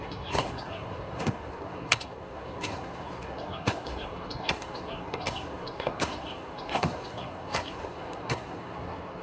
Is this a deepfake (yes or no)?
yes